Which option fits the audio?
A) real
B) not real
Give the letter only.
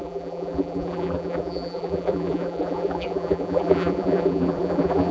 B